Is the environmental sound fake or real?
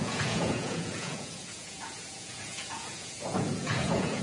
fake